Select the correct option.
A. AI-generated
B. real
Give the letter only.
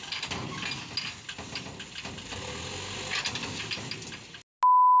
B